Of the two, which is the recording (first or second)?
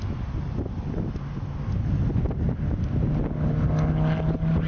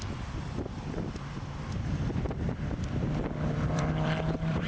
first